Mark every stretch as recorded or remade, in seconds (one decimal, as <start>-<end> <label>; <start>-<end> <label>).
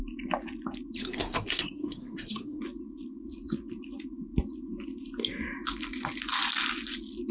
0.0-1.0 recorded; 1.0-2.6 remade; 2.6-7.3 recorded